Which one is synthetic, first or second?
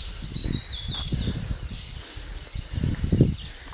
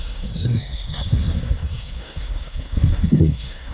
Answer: second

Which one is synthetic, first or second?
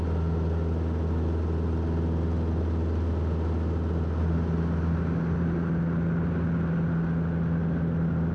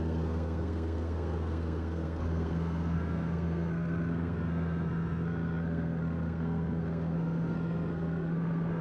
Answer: second